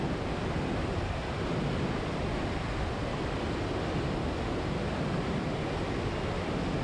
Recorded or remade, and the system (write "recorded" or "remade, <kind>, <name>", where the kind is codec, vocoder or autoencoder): recorded